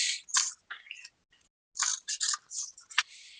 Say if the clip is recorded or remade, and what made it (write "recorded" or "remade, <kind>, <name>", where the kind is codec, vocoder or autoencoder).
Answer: recorded